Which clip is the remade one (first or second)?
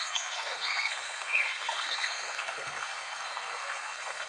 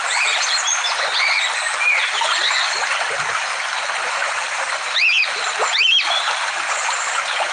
first